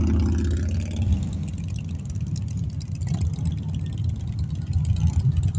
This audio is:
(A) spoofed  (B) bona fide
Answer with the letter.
B